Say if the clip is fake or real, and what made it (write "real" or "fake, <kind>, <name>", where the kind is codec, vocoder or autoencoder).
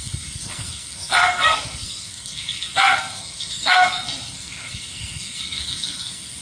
fake, codec, SNAC